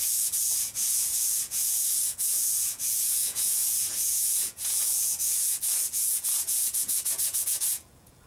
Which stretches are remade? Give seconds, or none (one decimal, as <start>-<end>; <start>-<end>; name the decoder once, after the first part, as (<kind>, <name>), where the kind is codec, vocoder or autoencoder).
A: 0.0-8.3 (vocoder, Vocos)